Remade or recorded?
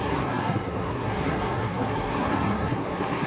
remade